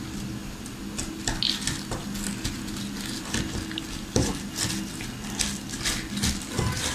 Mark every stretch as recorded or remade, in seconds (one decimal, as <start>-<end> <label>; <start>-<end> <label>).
0.0-6.9 recorded